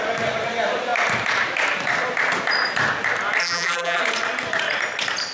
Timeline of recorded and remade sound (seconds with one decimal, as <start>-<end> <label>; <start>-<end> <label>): 0.0-3.4 recorded; 3.4-4.0 remade; 4.0-5.3 recorded